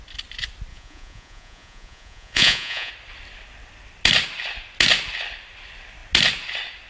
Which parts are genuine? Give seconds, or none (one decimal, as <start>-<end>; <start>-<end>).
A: 0.0-0.7; 2.9-6.9